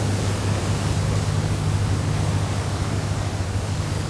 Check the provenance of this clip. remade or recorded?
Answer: remade